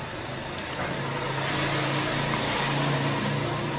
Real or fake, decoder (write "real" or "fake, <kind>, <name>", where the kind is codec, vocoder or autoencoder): real